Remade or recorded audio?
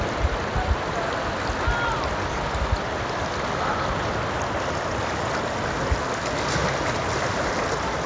recorded